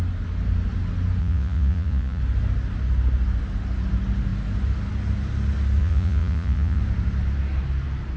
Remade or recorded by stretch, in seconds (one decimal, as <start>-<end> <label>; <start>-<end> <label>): 0.0-1.2 recorded; 1.2-2.2 remade; 2.2-5.8 recorded; 5.8-6.8 remade; 6.8-8.2 recorded